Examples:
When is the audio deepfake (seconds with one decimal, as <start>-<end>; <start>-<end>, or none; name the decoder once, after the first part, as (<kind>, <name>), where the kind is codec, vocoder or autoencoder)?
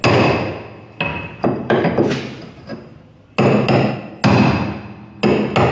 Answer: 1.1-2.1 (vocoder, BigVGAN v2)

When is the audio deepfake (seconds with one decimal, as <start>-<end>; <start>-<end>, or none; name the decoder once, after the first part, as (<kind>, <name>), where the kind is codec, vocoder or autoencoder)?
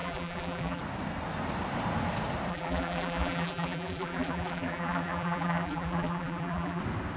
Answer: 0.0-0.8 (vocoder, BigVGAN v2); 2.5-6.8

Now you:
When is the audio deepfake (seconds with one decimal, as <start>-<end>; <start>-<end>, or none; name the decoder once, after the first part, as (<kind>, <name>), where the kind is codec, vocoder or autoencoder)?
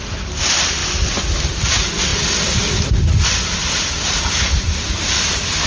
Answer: 0.0-0.8 (vocoder, BigVGAN v2); 1.4-5.7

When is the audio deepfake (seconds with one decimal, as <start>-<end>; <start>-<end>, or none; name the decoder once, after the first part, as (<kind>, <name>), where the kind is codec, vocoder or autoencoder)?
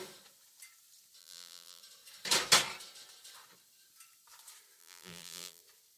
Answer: 1.2-1.8 (vocoder, BigVGAN v2); 4.8-5.6